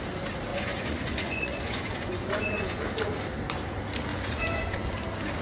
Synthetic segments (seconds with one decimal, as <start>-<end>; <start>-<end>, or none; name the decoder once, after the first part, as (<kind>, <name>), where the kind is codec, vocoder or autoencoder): 0.5-2.9 (vocoder, Vocos); 4.1-4.9